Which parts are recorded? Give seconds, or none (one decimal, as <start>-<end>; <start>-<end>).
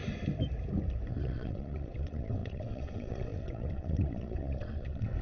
0.0-1.1